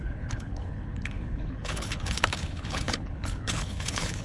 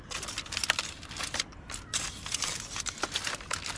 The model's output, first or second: first